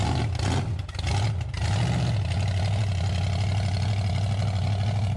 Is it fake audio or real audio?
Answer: real